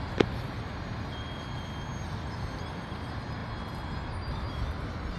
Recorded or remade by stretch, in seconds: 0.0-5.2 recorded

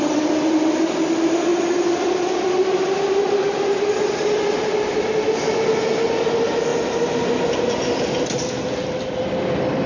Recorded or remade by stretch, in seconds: 0.0-9.9 recorded

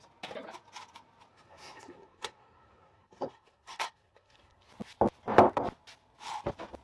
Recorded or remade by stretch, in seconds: 0.0-1.3 recorded; 1.3-4.7 remade; 4.7-6.8 recorded

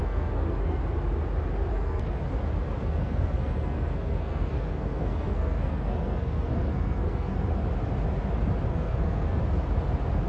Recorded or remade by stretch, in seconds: 0.0-0.8 remade; 0.8-1.7 recorded; 1.7-2.2 remade; 2.2-2.8 recorded; 2.8-7.6 remade; 7.6-8.7 recorded; 8.7-9.4 remade; 9.4-10.3 recorded

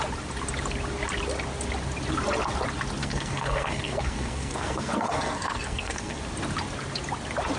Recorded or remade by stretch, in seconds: 0.0-3.0 recorded; 3.0-6.2 remade; 6.2-7.6 recorded

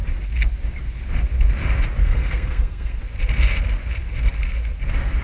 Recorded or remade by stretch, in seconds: 0.0-2.0 recorded; 2.0-3.0 remade; 3.0-5.2 recorded